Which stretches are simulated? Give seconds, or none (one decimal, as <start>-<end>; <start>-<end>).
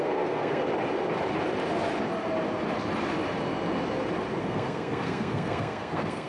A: 0.0-0.6; 4.4-6.3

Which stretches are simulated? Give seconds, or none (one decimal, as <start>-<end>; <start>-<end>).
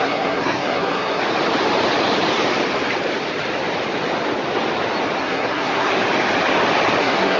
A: 0.0-1.2; 5.2-5.9; 7.0-7.4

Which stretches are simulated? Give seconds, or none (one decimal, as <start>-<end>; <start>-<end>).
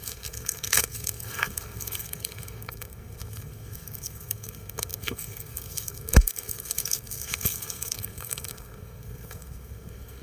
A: 0.0-10.2